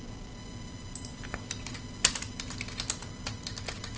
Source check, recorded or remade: recorded